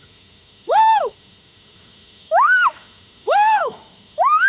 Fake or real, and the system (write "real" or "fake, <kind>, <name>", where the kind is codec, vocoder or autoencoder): fake, autoencoder, DAC-VAE